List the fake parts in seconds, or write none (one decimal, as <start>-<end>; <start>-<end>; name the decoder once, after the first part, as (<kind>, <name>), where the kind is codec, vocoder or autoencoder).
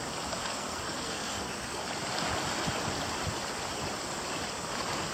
0.4-1.8 (codec, SNAC)